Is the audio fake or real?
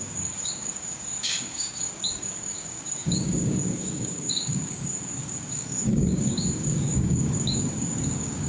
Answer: fake